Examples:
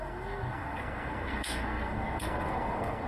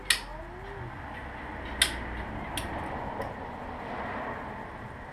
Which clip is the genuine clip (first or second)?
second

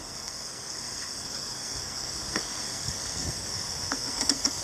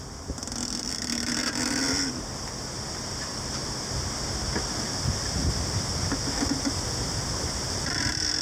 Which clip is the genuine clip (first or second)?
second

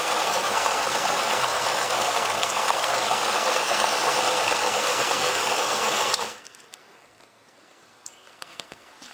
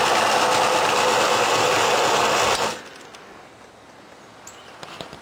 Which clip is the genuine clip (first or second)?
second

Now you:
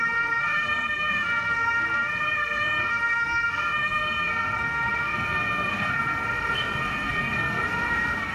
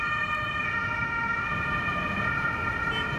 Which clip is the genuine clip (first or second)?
second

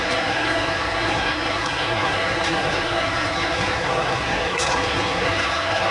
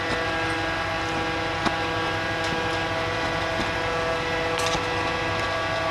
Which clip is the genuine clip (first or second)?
second